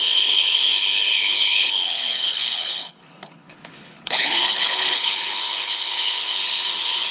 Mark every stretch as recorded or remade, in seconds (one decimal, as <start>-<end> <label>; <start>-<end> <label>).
0.0-7.1 remade

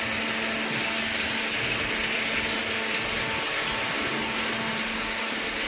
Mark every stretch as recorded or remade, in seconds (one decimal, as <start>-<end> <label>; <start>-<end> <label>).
0.0-5.7 recorded

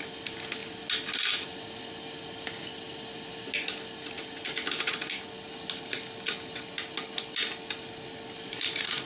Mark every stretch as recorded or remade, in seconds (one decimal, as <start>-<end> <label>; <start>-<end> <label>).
0.0-9.1 recorded

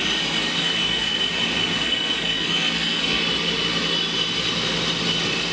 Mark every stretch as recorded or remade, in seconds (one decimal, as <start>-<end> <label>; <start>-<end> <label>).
0.0-0.5 recorded; 0.5-1.2 remade; 1.2-1.6 recorded; 1.6-3.2 remade; 3.2-5.5 recorded

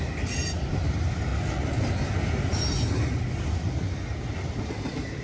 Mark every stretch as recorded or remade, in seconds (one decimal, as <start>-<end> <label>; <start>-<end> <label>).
0.0-1.3 remade; 1.3-4.2 recorded; 4.2-5.2 remade

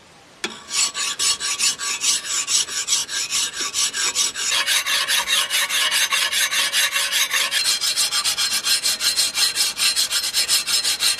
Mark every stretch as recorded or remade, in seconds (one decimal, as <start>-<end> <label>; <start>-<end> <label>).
0.0-11.2 recorded